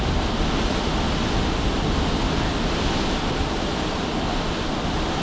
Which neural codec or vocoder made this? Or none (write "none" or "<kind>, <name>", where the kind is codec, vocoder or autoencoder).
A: none